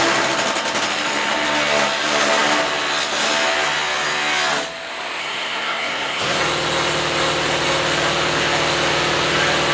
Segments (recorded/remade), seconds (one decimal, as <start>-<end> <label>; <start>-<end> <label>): 0.0-5.2 recorded; 5.2-6.4 remade; 6.4-9.7 recorded